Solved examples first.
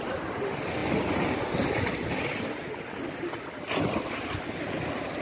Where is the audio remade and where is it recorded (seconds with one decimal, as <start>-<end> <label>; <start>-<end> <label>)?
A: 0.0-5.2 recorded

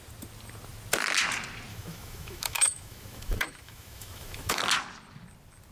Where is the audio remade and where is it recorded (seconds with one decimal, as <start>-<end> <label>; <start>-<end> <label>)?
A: 0.0-1.7 recorded; 1.7-4.6 remade; 4.6-5.7 recorded

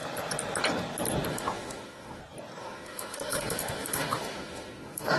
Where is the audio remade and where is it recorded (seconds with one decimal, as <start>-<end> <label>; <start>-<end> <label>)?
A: 0.0-1.3 recorded; 1.3-2.2 remade; 2.2-2.6 recorded; 2.6-5.2 remade

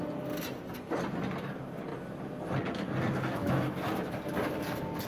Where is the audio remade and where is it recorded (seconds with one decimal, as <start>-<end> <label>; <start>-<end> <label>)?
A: 0.0-3.4 recorded; 3.4-4.2 remade; 4.2-5.1 recorded

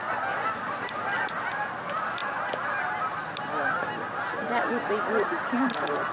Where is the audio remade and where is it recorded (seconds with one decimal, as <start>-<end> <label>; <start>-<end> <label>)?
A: 0.0-6.1 recorded

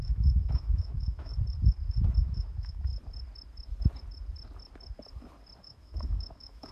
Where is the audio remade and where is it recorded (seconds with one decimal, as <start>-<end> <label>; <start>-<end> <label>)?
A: 0.0-1.3 remade; 1.3-2.2 recorded; 2.2-2.9 remade; 2.9-5.6 recorded; 5.6-6.7 remade

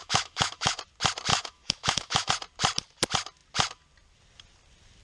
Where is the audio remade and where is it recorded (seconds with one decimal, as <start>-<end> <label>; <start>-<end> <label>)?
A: 0.0-0.8 remade; 0.8-1.3 recorded; 1.3-2.3 remade; 2.3-5.0 recorded

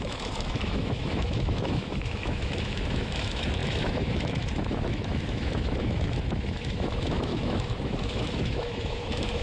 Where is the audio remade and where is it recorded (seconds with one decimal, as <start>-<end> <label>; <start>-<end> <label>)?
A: 0.0-9.4 remade